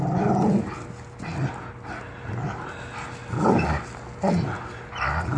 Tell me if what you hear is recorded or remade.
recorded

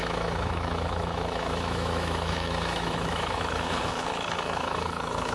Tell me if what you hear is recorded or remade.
remade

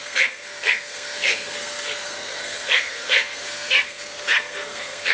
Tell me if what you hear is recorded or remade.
remade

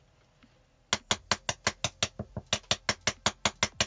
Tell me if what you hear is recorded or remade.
recorded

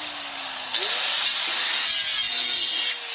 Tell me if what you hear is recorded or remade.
recorded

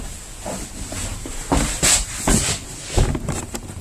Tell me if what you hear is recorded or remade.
recorded